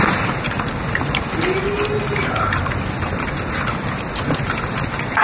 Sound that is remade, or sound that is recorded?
recorded